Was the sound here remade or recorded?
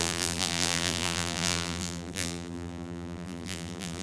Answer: remade